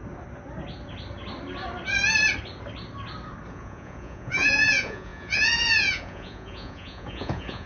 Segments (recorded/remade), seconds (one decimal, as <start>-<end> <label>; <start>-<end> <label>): 0.0-3.5 recorded; 3.5-7.7 remade